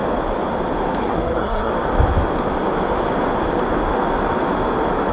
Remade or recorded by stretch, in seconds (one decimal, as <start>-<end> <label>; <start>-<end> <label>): 0.0-1.0 recorded; 1.0-1.7 remade; 1.7-5.1 recorded